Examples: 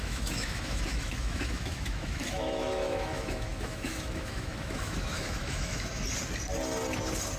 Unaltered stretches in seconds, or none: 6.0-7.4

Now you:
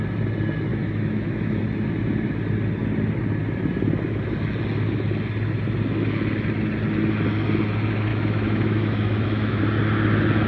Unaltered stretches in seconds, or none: 0.0-0.7; 1.6-8.1; 9.6-10.5

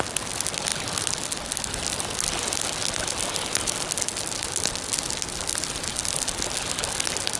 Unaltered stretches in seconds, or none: 0.0-7.4

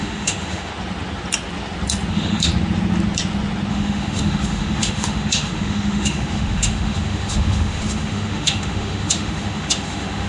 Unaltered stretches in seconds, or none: 0.7-2.1; 2.5-3.7

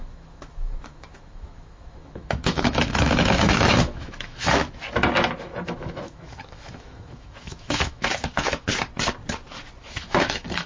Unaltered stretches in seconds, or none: 4.6-5.4; 8.7-9.8

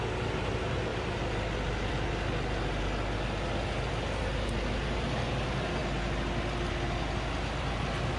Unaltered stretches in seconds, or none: 0.0-8.2